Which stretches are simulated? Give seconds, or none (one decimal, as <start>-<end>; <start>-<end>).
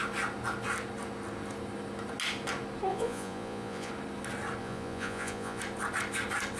2.9-3.9; 4.6-5.6